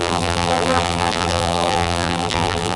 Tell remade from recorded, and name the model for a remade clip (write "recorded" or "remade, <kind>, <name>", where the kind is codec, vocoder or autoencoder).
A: remade, vocoder, BigVGAN v2